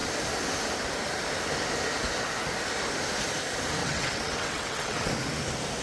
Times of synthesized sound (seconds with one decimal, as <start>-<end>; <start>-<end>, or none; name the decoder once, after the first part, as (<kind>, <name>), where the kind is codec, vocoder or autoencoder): 3.8-5.1 (vocoder, WaveNeXt)